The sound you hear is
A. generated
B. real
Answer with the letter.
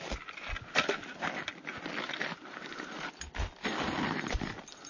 B